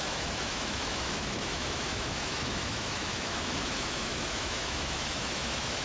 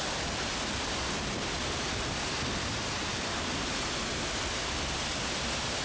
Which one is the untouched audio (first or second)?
second